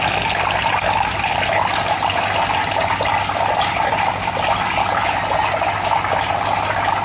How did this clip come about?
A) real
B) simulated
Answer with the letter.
A